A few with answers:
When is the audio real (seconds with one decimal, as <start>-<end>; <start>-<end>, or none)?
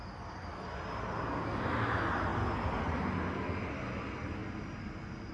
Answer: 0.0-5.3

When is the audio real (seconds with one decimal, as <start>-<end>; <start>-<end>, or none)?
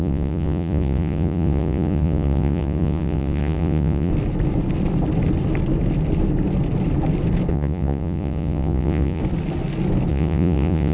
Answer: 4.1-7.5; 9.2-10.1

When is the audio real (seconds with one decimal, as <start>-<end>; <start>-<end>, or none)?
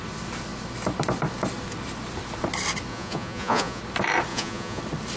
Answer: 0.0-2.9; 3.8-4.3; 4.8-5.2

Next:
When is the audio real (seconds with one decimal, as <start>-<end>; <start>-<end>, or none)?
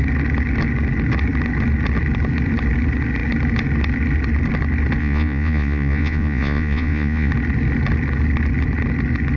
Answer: 0.0-5.0; 7.3-9.4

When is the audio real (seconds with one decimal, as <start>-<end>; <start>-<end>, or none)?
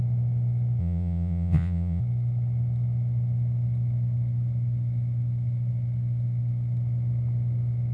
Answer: 0.0-0.8; 2.0-7.9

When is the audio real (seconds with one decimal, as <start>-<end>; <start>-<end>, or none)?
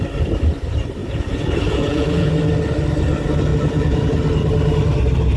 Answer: 0.0-1.0; 2.3-3.5; 4.0-5.4